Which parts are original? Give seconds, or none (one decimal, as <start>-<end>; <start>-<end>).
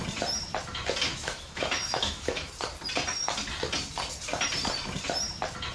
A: 0.0-1.1; 2.5-5.7